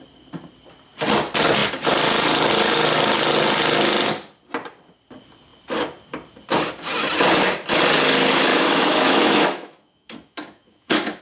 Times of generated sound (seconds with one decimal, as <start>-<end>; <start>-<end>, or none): 8.5-11.2